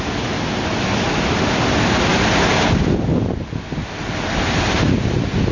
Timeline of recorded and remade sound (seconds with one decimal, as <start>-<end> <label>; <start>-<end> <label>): 0.0-5.5 recorded